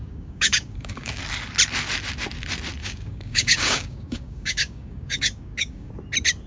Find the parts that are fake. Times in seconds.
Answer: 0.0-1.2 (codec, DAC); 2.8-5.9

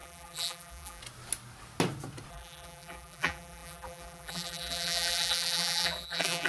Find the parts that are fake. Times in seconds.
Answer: 0.0-1.0 (vocoder, BigVGAN v2); 2.3-6.5

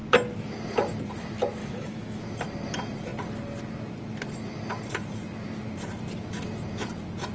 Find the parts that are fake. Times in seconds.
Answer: 1.6-2.2 (autoencoder, DAC-VAE)

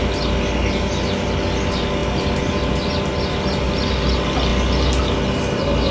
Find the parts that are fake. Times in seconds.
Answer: none

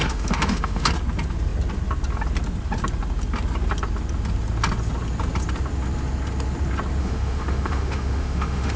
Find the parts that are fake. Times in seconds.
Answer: 0.0-0.9 (autoencoder, DAC-VAE); 7.0-8.8

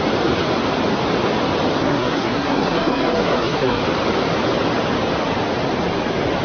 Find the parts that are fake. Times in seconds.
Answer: 1.8-3.8 (codec, SNAC)

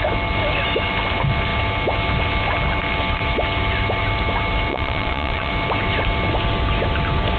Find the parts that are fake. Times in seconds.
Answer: 4.7-5.5 (vocoder, WaveNeXt)

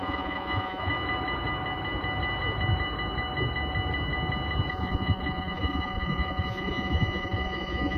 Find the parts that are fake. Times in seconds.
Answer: 0.0-0.9 (vocoder, Vocos); 4.7-8.0